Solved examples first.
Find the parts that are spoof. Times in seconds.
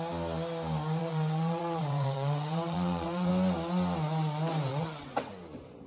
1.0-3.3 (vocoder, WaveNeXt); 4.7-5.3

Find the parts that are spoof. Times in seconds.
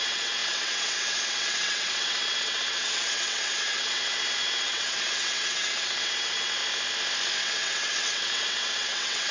0.0-6.6 (vocoder, WaveNeXt); 7.4-9.3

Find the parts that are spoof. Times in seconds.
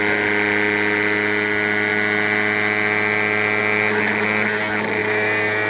none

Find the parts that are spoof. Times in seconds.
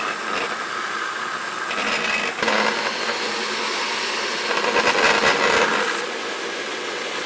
6.6-7.3 (vocoder, WaveNeXt)